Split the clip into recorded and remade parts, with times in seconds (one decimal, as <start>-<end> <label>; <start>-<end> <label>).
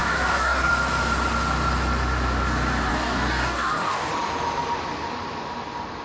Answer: 0.0-0.7 remade; 0.7-2.9 recorded; 2.9-4.1 remade; 4.1-6.0 recorded